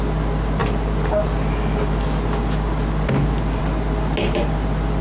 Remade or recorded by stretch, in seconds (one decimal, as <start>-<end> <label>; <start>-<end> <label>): 0.0-5.0 recorded